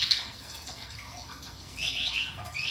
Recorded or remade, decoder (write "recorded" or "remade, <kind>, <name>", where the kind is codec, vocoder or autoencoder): remade, codec, SNAC